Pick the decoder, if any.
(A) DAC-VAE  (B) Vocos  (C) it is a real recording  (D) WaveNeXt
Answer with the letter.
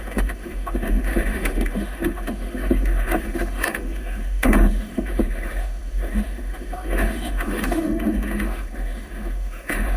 A